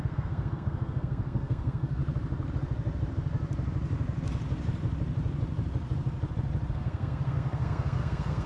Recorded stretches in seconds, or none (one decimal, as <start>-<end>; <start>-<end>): 2.0-6.7